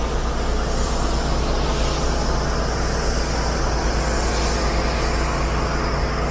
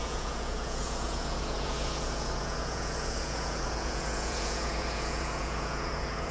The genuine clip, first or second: first